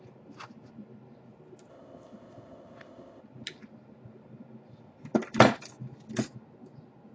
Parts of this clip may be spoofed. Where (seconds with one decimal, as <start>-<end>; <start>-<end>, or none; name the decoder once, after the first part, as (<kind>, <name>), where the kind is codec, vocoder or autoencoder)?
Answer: 1.7-3.2 (codec, ZipCodec)